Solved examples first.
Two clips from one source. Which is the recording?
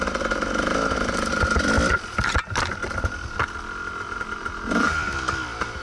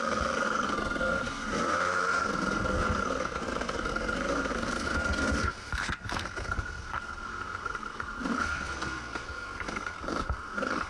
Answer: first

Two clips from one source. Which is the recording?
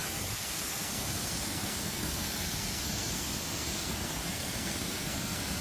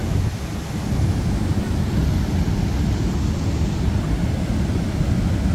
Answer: second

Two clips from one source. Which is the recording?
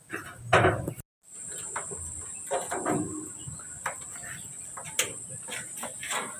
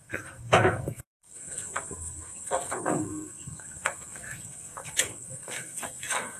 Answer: first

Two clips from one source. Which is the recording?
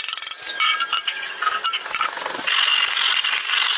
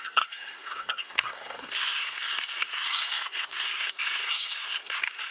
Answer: first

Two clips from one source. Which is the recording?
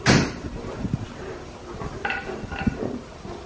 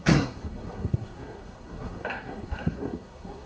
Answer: first